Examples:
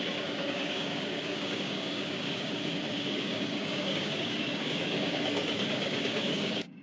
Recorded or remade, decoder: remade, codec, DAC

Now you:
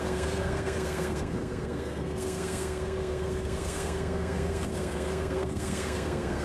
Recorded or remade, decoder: remade, codec, SNAC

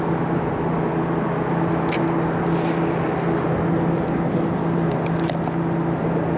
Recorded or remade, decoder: recorded